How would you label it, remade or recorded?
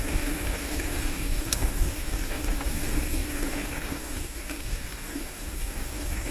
remade